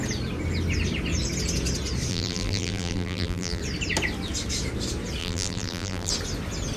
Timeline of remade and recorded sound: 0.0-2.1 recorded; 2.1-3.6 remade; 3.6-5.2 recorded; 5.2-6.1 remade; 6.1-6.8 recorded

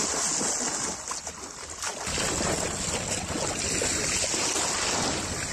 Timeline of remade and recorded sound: 0.0-5.5 recorded

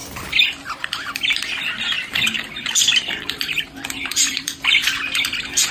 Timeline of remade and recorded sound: 0.0-1.8 remade; 1.8-2.9 recorded; 2.9-4.9 remade; 4.9-5.7 recorded